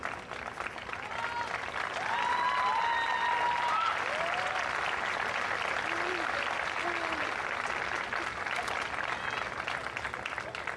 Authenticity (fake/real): real